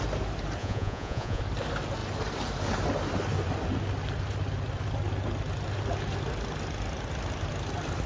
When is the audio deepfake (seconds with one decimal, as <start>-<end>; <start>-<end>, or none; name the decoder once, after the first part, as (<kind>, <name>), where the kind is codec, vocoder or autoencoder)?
0.6-1.4 (vocoder, Vocos)

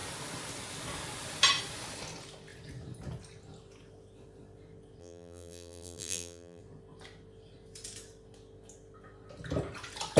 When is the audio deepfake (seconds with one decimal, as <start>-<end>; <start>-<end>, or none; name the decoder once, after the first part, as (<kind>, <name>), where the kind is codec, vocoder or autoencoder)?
5.0-6.6 (vocoder, BigVGAN v2)